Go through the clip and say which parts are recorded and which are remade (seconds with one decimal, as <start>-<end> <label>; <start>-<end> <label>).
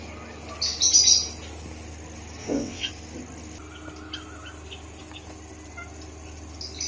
0.0-2.4 recorded; 2.4-2.9 remade; 2.9-6.9 recorded